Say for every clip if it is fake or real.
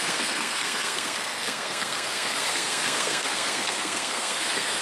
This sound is fake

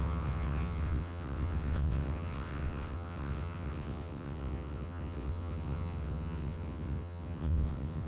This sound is fake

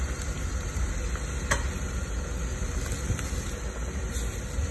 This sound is real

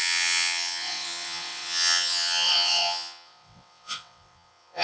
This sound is fake